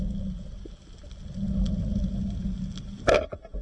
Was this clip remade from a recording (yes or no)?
no